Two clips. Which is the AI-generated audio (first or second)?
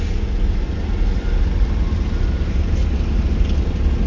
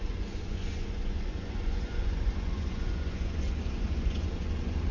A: second